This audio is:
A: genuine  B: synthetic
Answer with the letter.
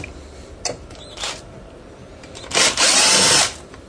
B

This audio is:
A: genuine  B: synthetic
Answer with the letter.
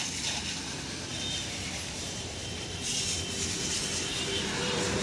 B